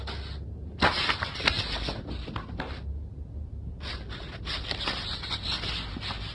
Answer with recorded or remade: recorded